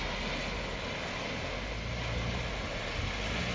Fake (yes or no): no